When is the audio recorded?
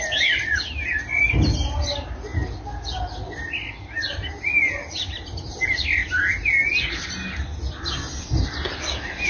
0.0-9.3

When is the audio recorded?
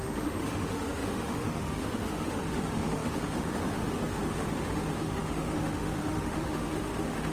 none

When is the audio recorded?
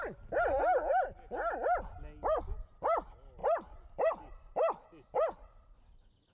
0.0-6.3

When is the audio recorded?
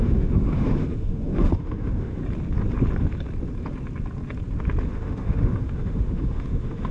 2.2-4.8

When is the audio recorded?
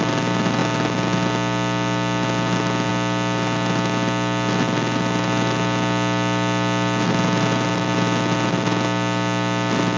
0.0-10.0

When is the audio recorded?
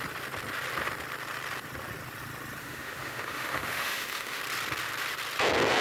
0.0-2.6; 4.4-5.8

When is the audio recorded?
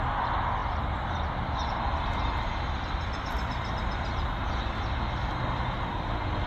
0.0-6.5